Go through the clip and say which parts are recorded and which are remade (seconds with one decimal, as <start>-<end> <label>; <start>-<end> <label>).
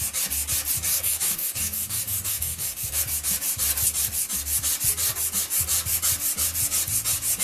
0.0-0.9 recorded; 0.9-3.0 remade; 3.0-7.4 recorded